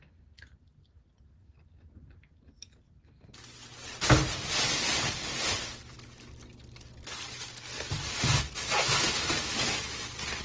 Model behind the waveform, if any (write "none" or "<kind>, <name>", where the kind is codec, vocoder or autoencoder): none